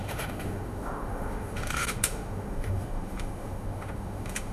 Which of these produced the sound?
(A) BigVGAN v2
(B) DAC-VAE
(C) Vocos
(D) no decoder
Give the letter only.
B